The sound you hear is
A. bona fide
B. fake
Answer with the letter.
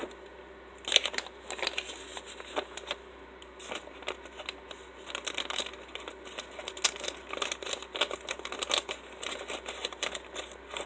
A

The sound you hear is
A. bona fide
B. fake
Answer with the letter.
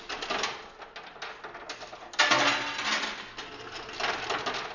A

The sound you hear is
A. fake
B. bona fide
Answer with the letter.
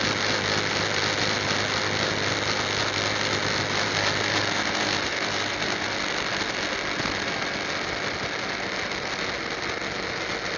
B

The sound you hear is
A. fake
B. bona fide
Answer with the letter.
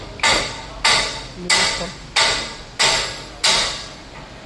B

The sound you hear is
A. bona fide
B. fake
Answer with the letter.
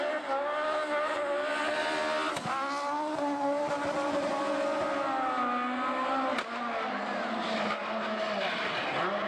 A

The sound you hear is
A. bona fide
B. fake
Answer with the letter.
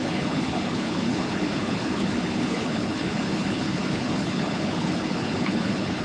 B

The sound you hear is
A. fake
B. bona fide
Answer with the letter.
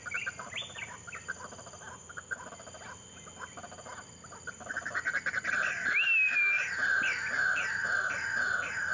B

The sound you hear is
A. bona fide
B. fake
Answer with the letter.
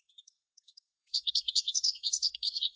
B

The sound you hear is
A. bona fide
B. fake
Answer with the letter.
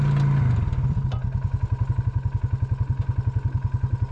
A